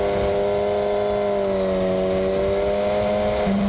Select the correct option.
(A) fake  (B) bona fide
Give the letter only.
B